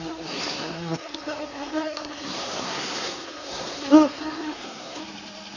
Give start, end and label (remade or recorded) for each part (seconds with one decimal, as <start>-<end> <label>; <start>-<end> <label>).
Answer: 0.0-5.0 remade; 5.0-5.6 recorded